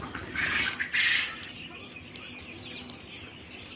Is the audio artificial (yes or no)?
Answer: no